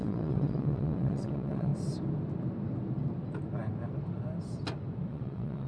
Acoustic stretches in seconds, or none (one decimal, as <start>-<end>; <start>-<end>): 1.7-5.1